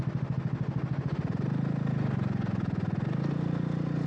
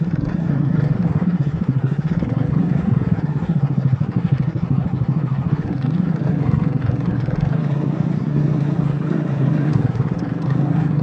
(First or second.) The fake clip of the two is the second